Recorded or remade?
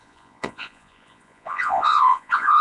remade